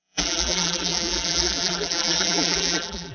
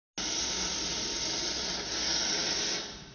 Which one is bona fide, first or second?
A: second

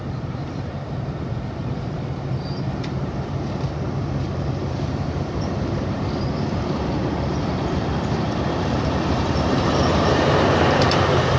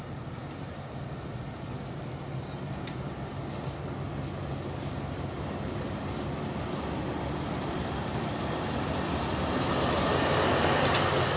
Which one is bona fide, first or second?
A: second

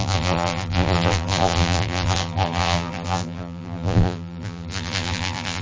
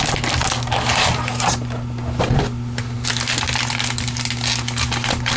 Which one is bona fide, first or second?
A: second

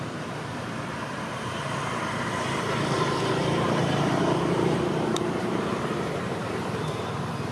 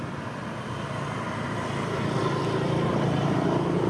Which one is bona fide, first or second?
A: second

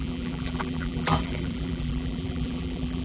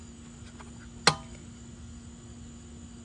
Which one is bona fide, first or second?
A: second